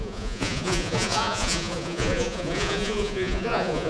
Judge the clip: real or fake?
fake